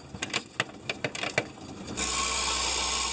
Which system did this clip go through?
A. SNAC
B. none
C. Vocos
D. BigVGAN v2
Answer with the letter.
B